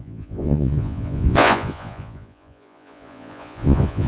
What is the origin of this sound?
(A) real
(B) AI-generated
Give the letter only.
B